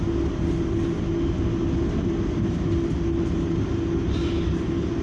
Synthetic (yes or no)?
no